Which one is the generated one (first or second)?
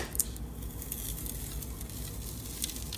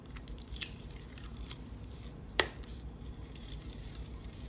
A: second